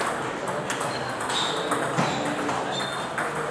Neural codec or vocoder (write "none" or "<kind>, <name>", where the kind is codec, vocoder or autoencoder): none